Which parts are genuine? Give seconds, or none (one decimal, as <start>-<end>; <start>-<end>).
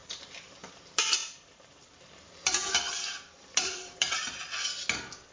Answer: 0.7-1.2; 4.4-5.3